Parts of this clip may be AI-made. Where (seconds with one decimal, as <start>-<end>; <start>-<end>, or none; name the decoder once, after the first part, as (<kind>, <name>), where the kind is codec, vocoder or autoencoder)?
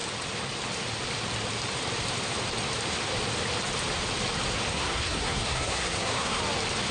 4.7-6.4 (codec, SNAC)